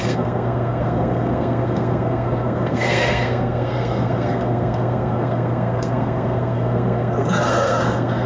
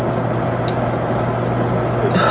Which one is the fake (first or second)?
first